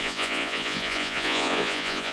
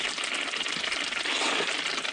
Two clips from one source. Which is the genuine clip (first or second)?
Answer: second